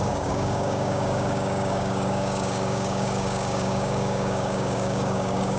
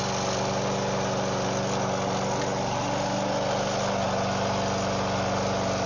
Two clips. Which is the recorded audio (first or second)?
second